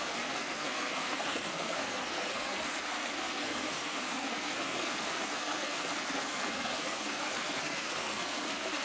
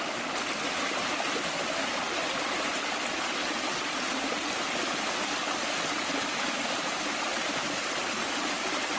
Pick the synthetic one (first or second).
first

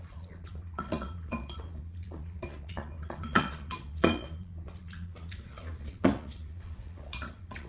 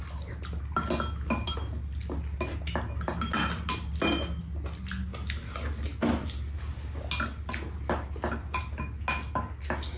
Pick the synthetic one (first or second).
first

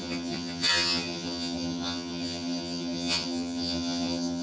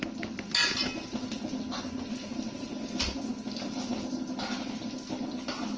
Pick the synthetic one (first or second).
first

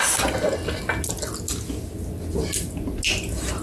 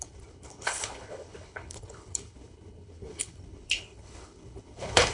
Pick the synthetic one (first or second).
second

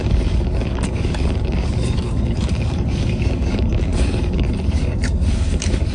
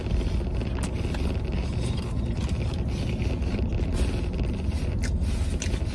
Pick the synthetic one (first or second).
first